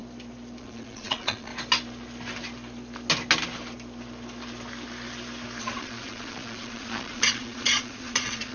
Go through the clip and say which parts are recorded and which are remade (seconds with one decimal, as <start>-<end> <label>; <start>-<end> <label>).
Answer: 0.0-0.6 recorded; 0.6-1.5 remade; 1.5-5.6 recorded; 5.6-8.5 remade